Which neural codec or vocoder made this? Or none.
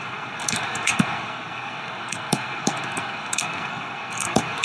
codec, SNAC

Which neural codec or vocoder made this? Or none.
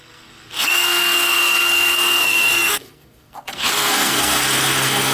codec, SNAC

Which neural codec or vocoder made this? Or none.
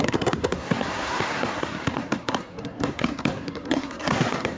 codec, SNAC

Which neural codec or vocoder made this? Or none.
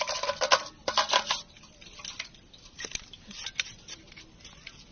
none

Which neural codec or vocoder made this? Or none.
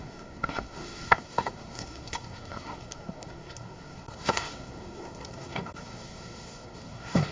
codec, SNAC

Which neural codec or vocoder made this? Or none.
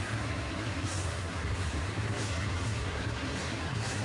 codec, SNAC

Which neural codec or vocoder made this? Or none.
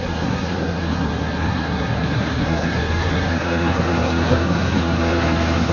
codec, SNAC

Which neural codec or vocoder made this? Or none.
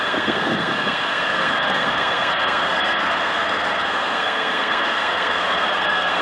codec, SNAC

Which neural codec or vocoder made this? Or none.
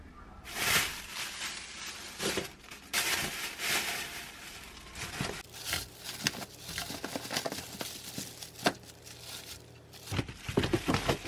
none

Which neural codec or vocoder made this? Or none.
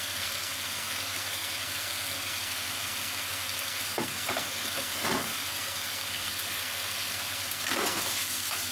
codec, SNAC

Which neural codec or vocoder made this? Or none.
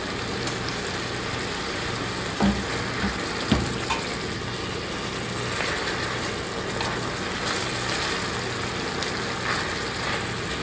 none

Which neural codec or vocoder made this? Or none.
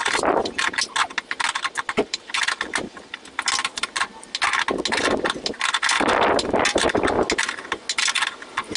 none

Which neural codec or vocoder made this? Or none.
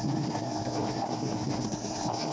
codec, SNAC